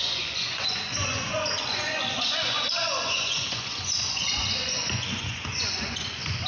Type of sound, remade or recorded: remade